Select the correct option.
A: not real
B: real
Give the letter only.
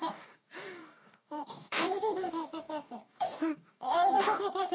A